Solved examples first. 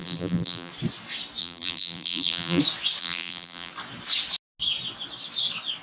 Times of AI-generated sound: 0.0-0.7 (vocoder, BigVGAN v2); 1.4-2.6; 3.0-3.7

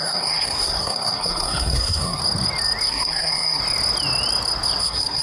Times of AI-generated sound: 0.0-2.2 (codec, SNAC); 2.9-3.6; 4.8-5.2

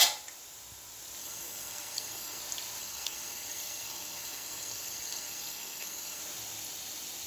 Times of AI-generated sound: 1.2-2.4 (codec, SNAC); 2.8-6.2

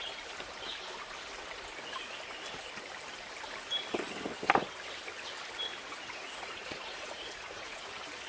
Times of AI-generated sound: 5.7-7.9 (vocoder, Vocos)

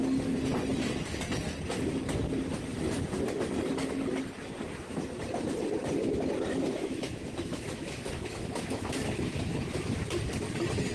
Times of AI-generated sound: 6.8-10.0 (autoencoder, DAC-VAE)

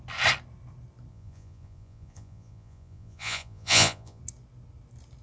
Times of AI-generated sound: 1.1-4.2 (vocoder, Vocos)

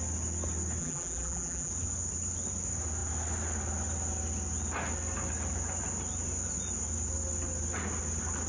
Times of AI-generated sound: 0.8-1.7 (vocoder, BigVGAN v2)